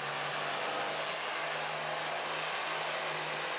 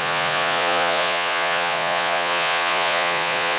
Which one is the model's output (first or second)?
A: second